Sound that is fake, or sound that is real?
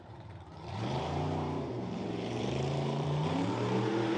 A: fake